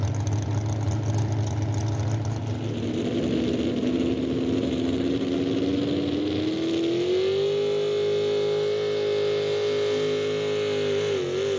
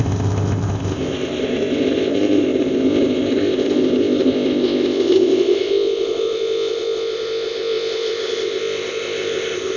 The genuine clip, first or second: first